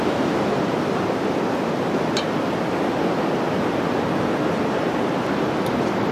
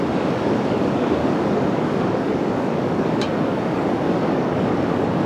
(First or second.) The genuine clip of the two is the first